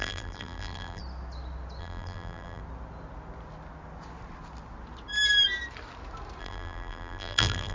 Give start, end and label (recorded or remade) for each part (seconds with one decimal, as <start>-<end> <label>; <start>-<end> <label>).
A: 0.0-1.0 remade; 1.0-1.8 recorded; 1.8-2.6 remade; 2.6-6.4 recorded; 6.4-7.7 remade